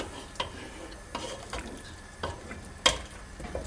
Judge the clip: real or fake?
real